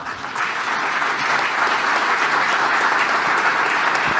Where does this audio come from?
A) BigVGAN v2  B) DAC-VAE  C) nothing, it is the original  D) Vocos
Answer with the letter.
C